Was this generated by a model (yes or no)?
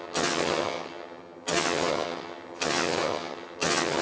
yes